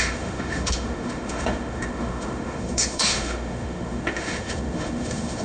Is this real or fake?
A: fake